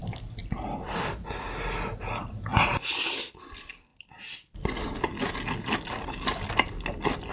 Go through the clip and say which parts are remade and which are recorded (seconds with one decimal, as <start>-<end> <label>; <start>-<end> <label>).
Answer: 0.0-7.3 recorded